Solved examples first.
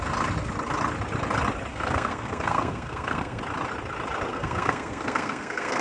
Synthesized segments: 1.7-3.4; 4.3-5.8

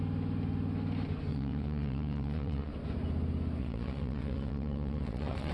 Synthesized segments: 1.3-2.7; 3.6-5.5

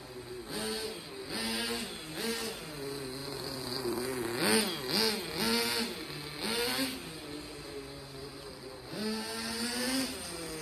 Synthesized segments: 3.2-4.6